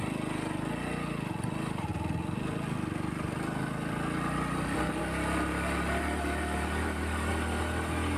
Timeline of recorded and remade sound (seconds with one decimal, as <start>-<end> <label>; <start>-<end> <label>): 0.0-8.2 recorded